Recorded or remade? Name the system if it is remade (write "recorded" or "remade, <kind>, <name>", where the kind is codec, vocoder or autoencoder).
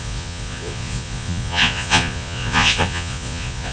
remade, vocoder, Vocos